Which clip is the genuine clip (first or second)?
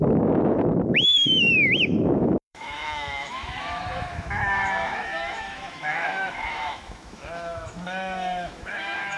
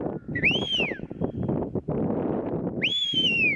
second